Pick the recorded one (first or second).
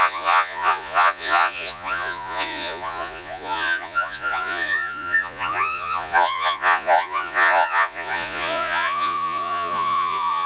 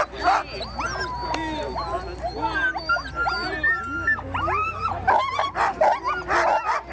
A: second